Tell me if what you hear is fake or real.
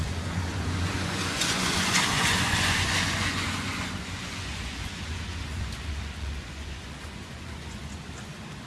fake